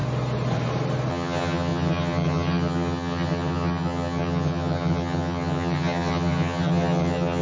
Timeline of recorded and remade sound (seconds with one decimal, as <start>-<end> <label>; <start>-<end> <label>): 0.0-1.1 recorded; 1.1-7.4 remade